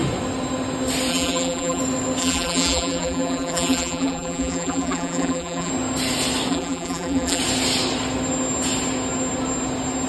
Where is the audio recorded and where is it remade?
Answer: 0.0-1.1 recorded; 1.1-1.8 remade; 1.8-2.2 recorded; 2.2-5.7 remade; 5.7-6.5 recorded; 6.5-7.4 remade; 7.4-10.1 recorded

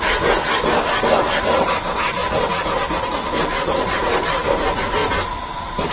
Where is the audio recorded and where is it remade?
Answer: 0.0-5.9 recorded